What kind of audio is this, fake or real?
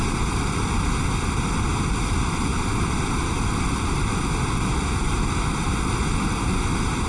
real